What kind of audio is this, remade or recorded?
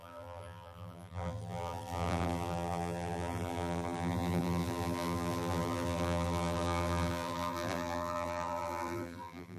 remade